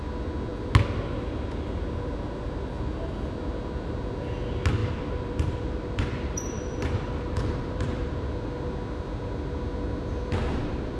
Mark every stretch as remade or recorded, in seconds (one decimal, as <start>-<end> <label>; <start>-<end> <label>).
0.0-4.8 recorded; 4.8-8.2 remade; 8.2-11.0 recorded